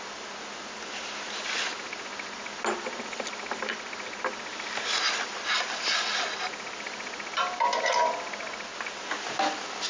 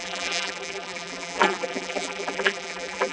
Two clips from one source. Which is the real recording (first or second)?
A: first